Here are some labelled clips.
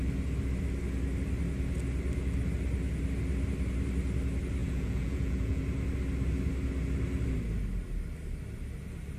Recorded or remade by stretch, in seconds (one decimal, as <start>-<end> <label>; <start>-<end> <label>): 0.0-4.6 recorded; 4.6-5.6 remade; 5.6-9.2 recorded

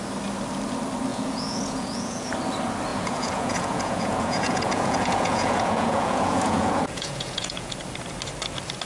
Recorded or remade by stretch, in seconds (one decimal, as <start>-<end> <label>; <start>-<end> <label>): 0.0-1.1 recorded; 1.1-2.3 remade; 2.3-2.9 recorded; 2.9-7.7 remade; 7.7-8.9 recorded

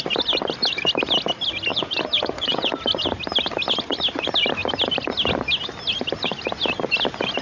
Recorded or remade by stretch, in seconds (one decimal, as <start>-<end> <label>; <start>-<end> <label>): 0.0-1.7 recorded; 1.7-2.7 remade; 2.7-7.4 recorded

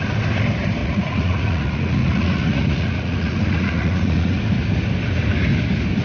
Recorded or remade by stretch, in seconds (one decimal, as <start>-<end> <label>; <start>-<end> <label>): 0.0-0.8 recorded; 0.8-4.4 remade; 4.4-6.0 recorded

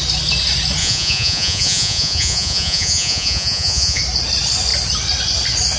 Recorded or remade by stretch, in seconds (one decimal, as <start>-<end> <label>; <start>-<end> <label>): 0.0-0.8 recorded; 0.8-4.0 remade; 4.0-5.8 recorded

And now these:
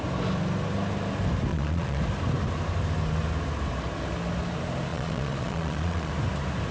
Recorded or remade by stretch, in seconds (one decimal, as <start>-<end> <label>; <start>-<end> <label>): 0.0-1.5 recorded; 1.5-2.0 remade; 2.0-4.9 recorded; 4.9-6.1 remade; 6.1-6.7 recorded